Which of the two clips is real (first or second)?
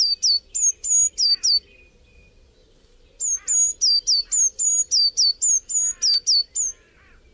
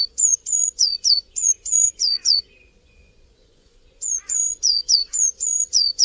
first